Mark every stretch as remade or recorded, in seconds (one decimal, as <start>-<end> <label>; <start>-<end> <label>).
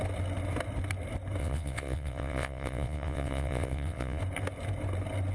0.0-1.4 recorded; 1.4-4.2 remade; 4.2-5.3 recorded